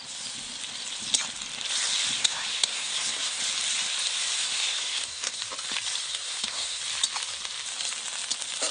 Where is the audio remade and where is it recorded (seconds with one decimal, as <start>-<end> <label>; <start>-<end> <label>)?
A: 0.0-2.2 recorded; 2.2-3.4 remade; 3.4-4.4 recorded; 4.4-5.4 remade; 5.4-6.1 recorded; 6.1-6.8 remade; 6.8-8.7 recorded